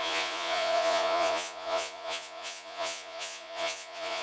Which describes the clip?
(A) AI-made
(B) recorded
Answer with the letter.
A